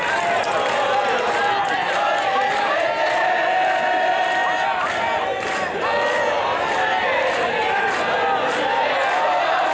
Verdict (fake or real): real